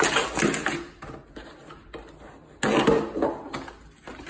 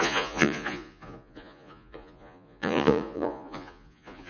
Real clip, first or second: first